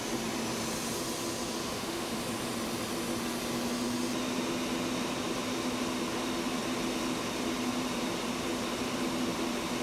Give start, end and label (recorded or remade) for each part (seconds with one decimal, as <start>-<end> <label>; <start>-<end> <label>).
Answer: 0.0-1.6 recorded; 1.6-2.2 remade; 2.2-9.8 recorded